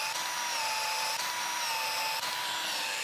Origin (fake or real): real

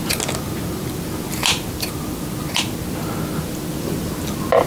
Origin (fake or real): real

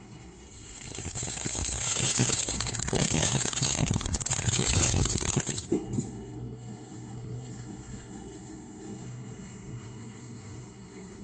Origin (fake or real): fake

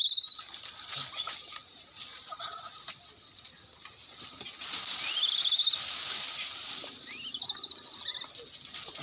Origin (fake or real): real